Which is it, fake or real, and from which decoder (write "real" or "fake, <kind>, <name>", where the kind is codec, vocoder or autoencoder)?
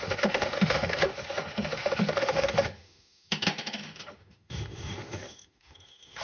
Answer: fake, autoencoder, DAC-VAE